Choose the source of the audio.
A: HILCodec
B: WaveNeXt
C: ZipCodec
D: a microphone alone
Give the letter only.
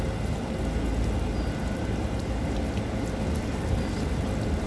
D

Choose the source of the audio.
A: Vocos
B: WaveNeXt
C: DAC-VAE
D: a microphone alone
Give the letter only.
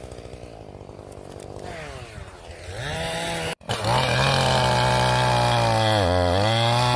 D